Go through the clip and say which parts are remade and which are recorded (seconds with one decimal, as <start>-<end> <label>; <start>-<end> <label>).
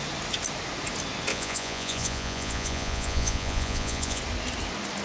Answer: 0.0-1.3 recorded; 1.3-4.2 remade; 4.2-5.0 recorded